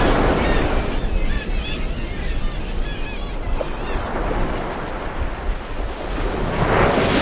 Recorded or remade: recorded